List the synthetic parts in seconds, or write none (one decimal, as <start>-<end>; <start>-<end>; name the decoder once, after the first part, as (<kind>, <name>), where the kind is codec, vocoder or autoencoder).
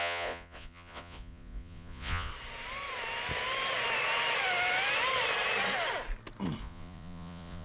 0.0-2.3 (vocoder, Vocos); 6.6-7.6